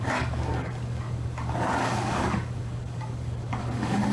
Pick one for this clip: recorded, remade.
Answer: remade